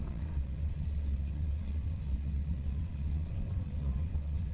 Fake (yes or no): yes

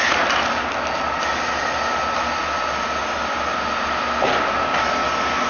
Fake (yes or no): no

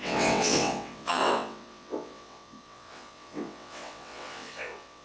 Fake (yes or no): yes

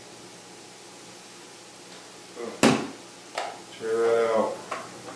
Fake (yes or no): no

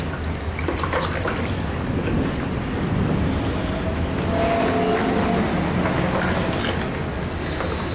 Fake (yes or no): no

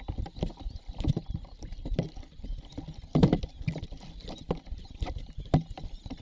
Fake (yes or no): no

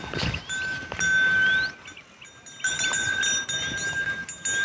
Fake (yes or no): no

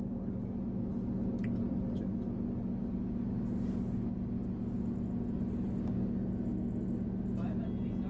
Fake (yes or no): no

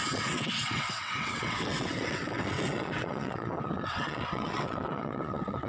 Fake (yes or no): yes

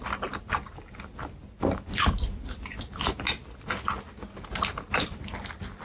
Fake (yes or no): no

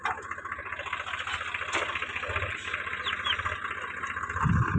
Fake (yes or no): no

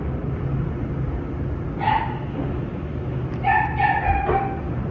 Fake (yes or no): no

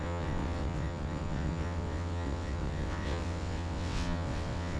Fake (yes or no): yes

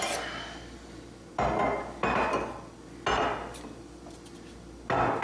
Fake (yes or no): no